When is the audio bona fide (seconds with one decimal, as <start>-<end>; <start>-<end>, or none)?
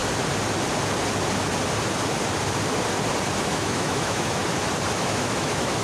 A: 0.0-3.5; 4.4-5.0